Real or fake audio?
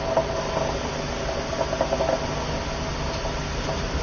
real